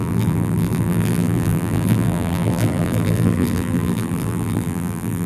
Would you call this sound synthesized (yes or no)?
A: yes